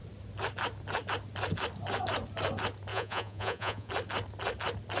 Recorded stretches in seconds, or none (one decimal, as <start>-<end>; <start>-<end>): 0.0-2.9; 3.9-5.0